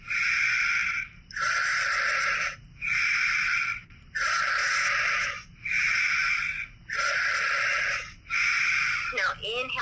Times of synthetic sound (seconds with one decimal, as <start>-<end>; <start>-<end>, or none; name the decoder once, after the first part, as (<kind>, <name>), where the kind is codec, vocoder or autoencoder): none